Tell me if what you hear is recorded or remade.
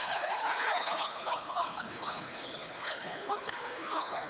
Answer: remade